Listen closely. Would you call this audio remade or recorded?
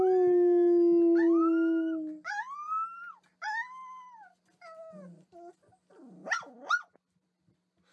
recorded